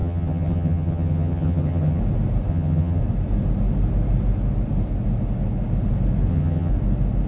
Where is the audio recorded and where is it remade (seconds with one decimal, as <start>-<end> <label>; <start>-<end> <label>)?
0.0-2.0 remade; 2.0-2.5 recorded; 2.5-3.0 remade; 3.0-6.3 recorded; 6.3-6.7 remade; 6.7-7.3 recorded